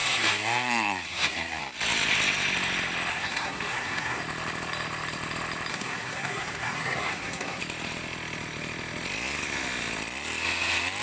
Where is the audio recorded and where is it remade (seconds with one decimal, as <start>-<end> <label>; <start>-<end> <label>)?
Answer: 0.0-1.6 remade; 1.6-3.1 recorded; 3.1-4.2 remade; 4.2-5.7 recorded; 5.7-7.6 remade; 7.6-11.0 recorded